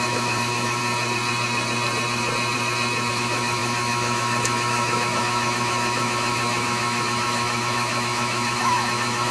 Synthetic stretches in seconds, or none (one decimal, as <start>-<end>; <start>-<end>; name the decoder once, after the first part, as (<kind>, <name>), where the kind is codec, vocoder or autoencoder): 0.0-0.8 (autoencoder, DAC-VAE); 3.1-9.3